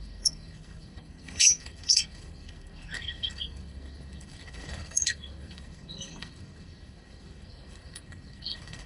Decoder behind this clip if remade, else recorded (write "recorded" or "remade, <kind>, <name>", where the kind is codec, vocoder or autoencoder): remade, codec, SNAC